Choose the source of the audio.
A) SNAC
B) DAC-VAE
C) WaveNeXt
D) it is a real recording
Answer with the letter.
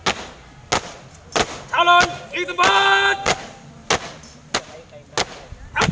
D